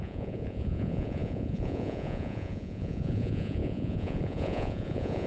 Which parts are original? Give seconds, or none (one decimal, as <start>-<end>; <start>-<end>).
none